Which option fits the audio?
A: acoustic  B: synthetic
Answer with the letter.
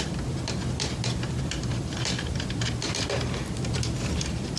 B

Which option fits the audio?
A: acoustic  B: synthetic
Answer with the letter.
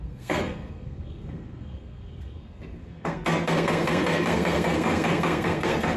B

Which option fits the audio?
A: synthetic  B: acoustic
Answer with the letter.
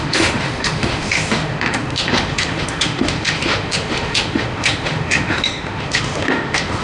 A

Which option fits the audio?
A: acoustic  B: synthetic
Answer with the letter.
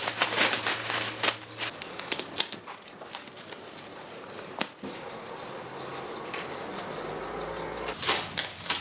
A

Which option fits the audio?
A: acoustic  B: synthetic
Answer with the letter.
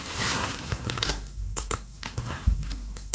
B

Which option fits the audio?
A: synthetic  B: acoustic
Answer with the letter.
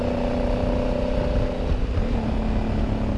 B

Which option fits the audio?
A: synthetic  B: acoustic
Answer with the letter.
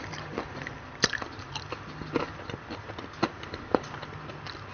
A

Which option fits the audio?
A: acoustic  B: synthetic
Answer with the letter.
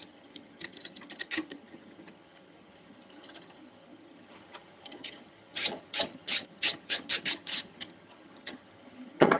B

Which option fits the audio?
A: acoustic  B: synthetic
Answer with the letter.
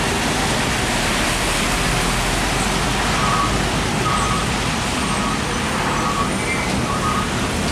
A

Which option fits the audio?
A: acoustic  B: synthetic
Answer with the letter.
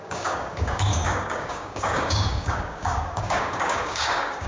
B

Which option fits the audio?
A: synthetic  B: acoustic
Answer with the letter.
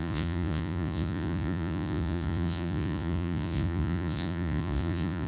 A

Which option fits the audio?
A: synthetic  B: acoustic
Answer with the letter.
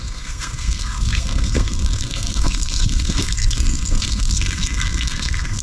A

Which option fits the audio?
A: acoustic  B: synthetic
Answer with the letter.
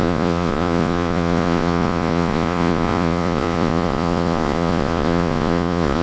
B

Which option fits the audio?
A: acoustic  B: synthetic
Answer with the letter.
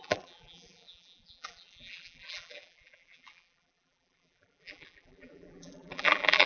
B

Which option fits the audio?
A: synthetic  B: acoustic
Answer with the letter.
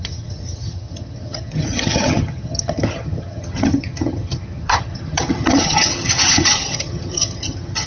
A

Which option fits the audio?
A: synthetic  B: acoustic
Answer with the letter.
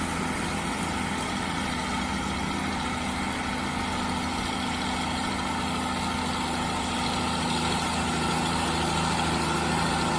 B